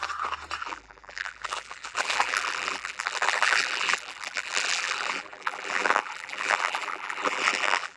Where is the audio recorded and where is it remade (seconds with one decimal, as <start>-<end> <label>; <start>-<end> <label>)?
0.0-0.6 recorded; 0.6-8.0 remade